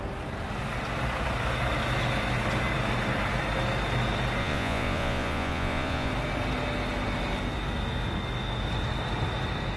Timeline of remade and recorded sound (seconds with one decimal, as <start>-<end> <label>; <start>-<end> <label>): 0.0-4.4 recorded; 4.4-6.1 remade; 6.1-9.8 recorded